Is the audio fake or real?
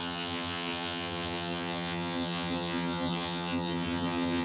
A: fake